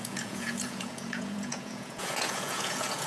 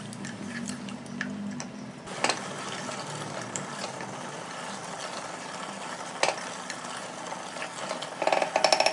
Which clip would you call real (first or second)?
second